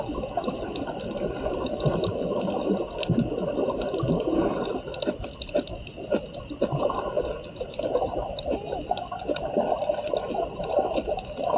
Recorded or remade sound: recorded